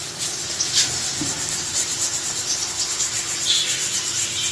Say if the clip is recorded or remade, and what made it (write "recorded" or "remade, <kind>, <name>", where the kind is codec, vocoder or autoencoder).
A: remade, vocoder, BigVGAN v2